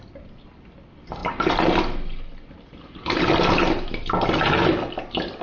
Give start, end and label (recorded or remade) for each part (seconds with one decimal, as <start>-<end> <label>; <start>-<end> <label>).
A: 0.0-5.4 recorded